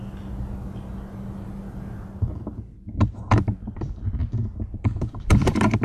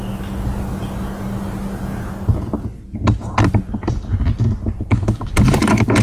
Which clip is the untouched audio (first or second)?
second